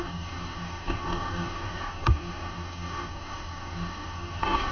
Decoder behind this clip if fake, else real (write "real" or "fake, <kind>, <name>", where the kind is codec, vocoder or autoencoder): fake, codec, DAC